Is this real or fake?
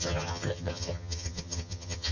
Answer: fake